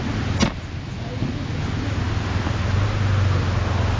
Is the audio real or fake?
real